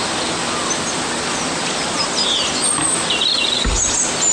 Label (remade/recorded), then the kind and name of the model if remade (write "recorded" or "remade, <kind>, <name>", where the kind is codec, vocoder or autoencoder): recorded